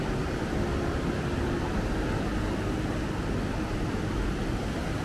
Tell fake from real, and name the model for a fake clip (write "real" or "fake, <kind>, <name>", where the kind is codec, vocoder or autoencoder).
real